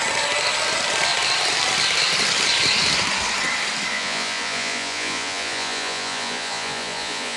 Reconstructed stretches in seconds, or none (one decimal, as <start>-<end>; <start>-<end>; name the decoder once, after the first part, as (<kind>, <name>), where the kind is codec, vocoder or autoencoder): 3.9-7.4 (vocoder, Vocos)